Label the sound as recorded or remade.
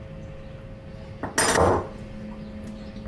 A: recorded